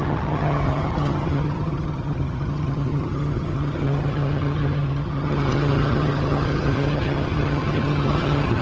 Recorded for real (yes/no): no